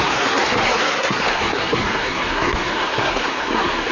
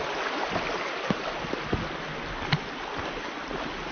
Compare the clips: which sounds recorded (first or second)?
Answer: second